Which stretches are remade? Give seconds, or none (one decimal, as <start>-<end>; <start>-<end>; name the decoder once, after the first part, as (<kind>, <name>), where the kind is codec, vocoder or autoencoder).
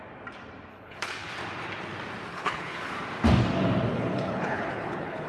0.7-1.3 (codec, HILCodec); 2.3-2.9; 3.9-5.3